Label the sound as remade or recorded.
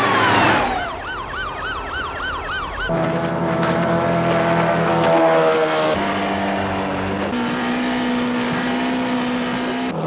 recorded